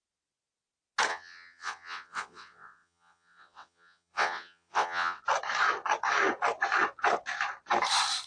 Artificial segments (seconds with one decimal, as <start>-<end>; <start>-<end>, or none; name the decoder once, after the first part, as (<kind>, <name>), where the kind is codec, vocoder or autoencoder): 1.1-5.2 (vocoder, WaveNeXt)